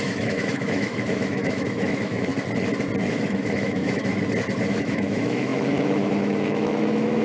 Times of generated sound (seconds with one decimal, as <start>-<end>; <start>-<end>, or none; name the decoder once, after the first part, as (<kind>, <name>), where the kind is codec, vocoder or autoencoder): 0.0-2.3 (autoencoder, DAC-VAE); 3.1-4.1; 4.7-7.2